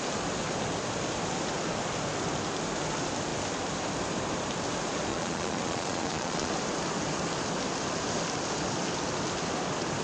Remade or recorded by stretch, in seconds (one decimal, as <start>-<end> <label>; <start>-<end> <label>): 0.0-5.1 recorded; 5.1-6.5 remade; 6.5-10.0 recorded